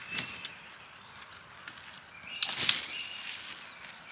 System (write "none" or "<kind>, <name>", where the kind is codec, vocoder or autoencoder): vocoder, BigVGAN v2